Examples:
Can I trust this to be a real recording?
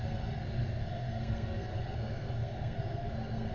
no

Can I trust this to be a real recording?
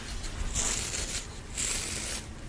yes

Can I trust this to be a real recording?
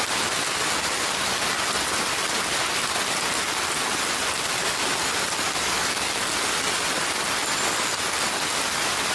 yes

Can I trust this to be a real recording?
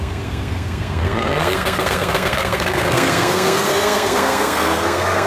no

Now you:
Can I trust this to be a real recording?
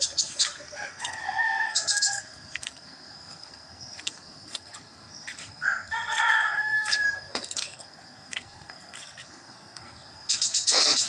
no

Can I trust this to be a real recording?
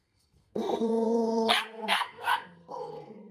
no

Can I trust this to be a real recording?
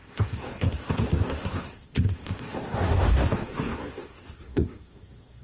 no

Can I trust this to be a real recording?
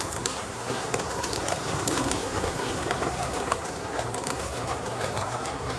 no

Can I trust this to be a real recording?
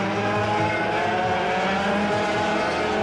yes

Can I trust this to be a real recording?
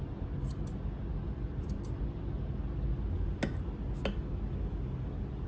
yes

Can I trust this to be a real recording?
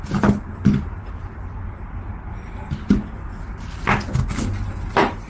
yes